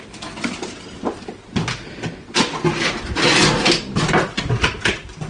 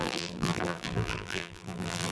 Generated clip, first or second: second